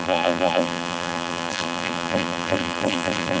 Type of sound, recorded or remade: remade